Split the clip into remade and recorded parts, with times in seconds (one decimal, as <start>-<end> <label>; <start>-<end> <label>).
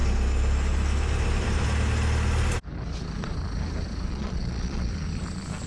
0.0-4.1 recorded; 4.1-4.9 remade; 4.9-5.7 recorded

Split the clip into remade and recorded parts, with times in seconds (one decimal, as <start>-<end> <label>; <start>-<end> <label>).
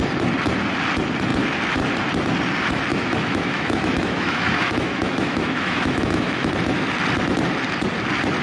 0.0-2.9 recorded; 2.9-6.5 remade; 6.5-8.4 recorded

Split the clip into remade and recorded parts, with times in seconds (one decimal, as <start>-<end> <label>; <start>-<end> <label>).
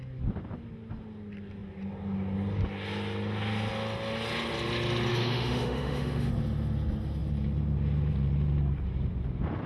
0.0-5.1 recorded; 5.1-6.3 remade; 6.3-9.7 recorded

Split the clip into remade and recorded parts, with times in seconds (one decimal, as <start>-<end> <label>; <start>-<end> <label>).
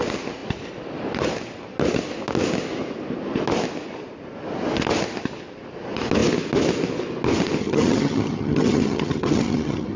0.0-7.6 recorded; 7.6-10.0 remade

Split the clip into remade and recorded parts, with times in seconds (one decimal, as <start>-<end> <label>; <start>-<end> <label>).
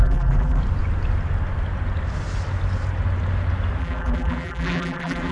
0.0-0.6 remade; 0.6-3.8 recorded; 3.8-5.3 remade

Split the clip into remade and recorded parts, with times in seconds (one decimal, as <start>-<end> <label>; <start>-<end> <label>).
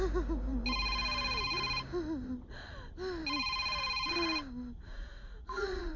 0.0-4.9 recorded; 4.9-6.0 remade